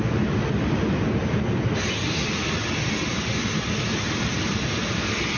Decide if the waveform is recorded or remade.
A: recorded